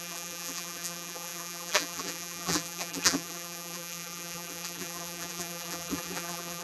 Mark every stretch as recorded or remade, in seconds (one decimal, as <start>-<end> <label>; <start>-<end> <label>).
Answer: 0.0-6.6 remade